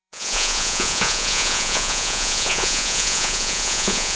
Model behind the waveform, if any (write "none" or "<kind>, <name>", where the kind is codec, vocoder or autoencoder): vocoder, Vocos